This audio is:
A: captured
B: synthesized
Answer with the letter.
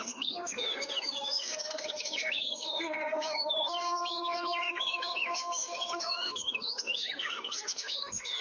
B